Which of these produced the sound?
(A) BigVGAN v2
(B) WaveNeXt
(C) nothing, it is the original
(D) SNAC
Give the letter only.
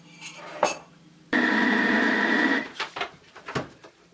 A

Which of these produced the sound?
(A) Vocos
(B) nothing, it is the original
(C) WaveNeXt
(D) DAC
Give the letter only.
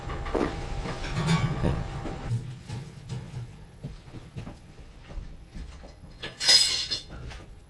A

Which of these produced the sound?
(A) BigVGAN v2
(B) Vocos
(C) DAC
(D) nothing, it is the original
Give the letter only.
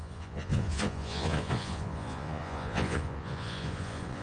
B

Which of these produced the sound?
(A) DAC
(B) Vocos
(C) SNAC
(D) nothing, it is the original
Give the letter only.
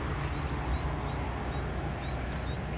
D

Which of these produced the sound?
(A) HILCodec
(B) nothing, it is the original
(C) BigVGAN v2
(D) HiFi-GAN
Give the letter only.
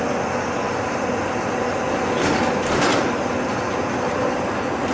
B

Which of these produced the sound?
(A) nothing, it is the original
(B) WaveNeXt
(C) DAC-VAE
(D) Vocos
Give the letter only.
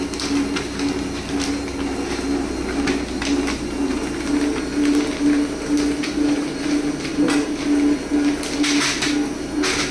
A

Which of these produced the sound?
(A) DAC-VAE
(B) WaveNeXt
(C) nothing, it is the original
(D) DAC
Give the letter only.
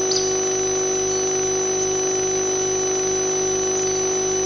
C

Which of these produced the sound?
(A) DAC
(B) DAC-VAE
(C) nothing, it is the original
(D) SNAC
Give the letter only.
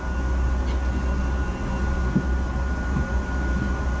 C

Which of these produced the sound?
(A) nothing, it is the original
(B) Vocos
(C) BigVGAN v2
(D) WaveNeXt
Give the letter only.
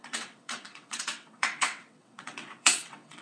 D